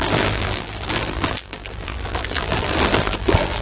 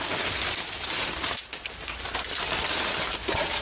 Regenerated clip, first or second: first